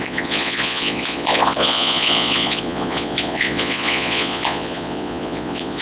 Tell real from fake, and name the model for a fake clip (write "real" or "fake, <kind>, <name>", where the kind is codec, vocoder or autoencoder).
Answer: fake, vocoder, Vocos